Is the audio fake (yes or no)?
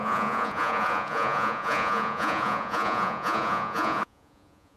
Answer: yes